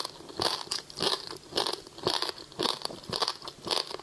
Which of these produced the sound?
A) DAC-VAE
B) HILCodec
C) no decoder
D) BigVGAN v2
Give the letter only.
C